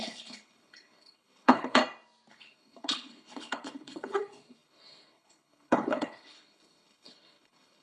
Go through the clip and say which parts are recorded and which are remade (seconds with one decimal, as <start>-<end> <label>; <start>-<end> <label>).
0.0-1.8 remade; 1.8-2.3 recorded; 2.3-7.8 remade